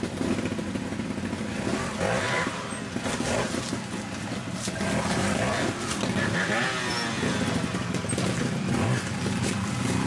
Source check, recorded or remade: recorded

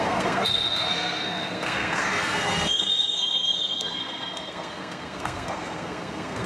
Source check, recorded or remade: remade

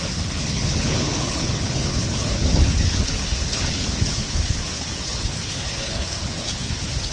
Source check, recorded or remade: remade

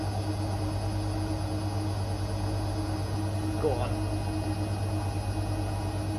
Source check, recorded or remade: recorded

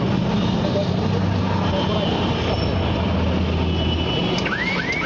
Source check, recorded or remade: recorded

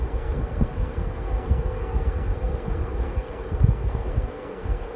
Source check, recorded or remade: remade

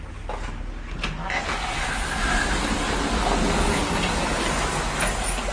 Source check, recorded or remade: recorded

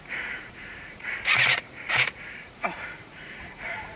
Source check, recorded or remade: remade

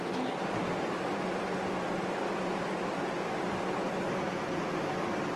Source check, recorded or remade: recorded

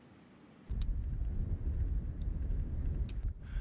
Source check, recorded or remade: recorded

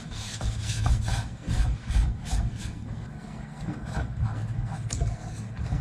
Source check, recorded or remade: remade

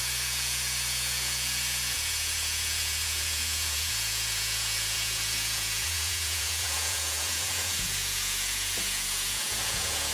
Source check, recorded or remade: remade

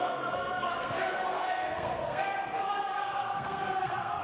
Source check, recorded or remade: remade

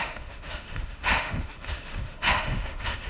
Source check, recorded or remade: remade